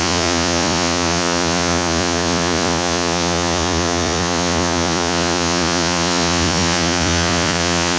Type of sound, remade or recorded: remade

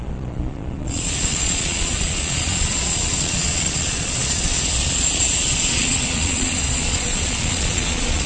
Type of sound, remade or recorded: remade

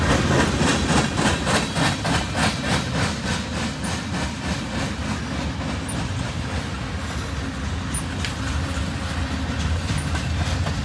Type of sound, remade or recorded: recorded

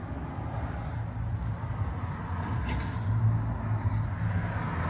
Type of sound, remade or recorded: recorded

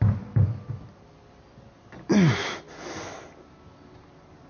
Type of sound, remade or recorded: recorded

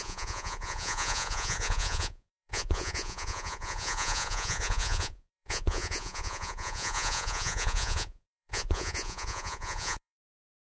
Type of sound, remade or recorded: remade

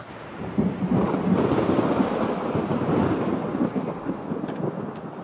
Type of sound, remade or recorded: recorded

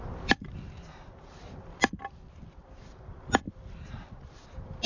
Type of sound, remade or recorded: recorded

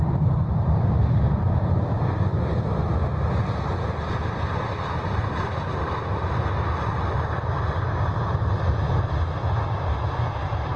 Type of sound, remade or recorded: recorded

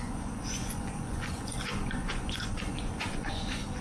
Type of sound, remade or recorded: remade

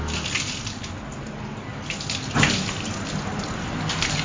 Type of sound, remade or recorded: recorded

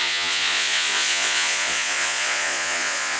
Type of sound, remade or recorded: remade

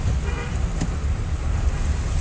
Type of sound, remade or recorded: recorded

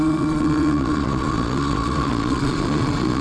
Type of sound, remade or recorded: remade